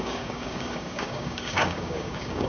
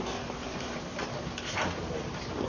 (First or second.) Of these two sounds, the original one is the second